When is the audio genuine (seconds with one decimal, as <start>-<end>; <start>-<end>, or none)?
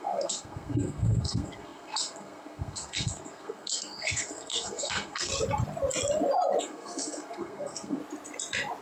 5.3-6.6; 8.0-8.8